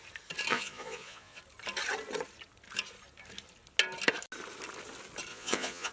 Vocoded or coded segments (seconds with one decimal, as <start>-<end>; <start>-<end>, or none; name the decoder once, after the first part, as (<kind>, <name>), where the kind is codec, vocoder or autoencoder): 0.5-1.4 (vocoder, Vocos); 5.3-5.9